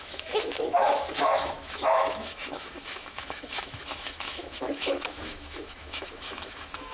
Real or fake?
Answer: fake